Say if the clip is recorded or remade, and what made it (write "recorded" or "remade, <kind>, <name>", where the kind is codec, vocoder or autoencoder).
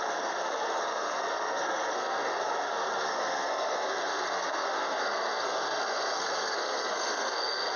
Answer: remade, codec, SNAC